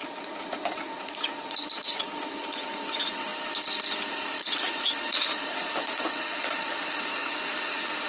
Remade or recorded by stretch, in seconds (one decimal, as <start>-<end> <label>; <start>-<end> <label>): 0.0-3.3 remade; 3.3-4.1 recorded; 4.1-8.1 remade